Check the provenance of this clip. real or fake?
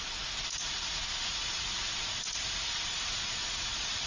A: fake